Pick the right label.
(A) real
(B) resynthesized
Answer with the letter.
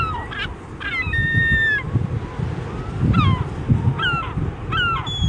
A